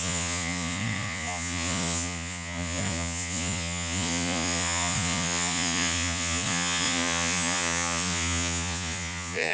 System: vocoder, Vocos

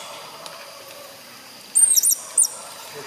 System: none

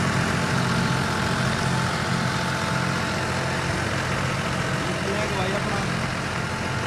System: none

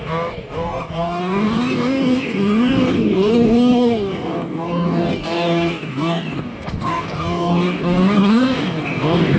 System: codec, DAC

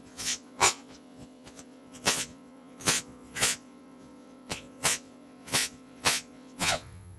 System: vocoder, Vocos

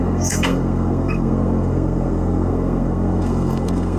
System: codec, SNAC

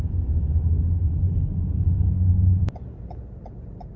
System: none